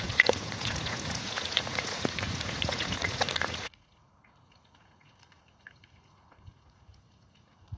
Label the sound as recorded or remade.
remade